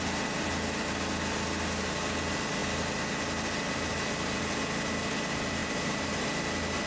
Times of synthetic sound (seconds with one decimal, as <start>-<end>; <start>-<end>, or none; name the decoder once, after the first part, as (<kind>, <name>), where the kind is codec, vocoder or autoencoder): 5.6-6.3 (vocoder, BigVGAN v2)